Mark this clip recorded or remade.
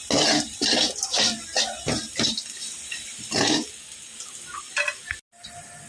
recorded